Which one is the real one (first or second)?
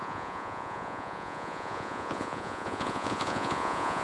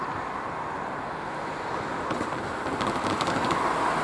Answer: second